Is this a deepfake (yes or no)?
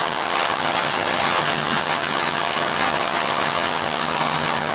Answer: yes